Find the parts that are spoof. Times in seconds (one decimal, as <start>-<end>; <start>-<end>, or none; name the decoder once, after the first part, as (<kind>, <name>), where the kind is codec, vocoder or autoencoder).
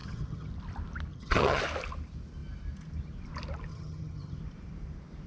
0.0-0.5 (vocoder, HiFi-GAN); 1.1-1.6; 3.7-4.4